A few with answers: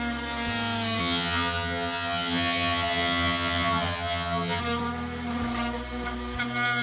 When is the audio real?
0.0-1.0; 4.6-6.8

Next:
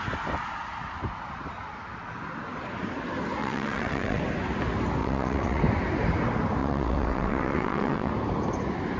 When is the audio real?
0.0-3.4; 4.2-5.0; 5.6-6.6; 8.1-9.0

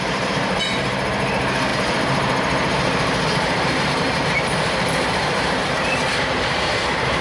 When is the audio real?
none

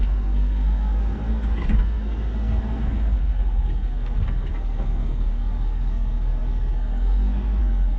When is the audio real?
none

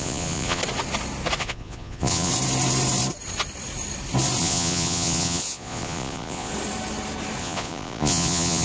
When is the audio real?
0.6-1.4; 2.3-4.4; 6.5-7.4

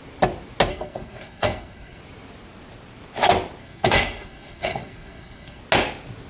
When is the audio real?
0.0-0.7; 2.0-3.6; 5.6-6.3